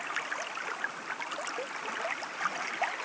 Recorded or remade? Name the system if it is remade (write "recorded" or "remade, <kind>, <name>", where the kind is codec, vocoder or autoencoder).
recorded